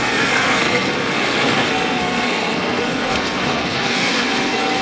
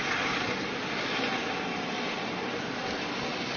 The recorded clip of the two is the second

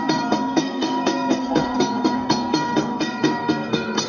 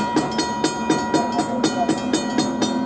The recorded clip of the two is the second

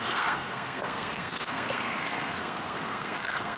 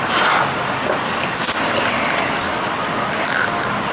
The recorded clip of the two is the second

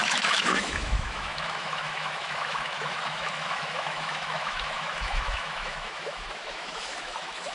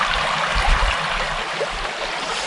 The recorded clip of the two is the second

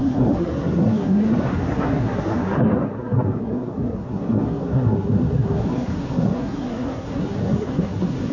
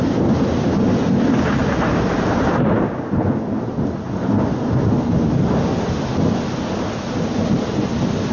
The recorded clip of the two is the second